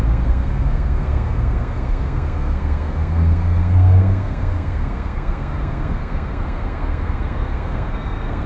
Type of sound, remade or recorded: remade